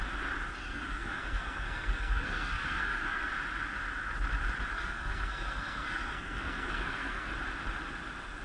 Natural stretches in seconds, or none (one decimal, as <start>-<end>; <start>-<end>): 0.0-0.6; 3.3-4.7; 7.3-8.4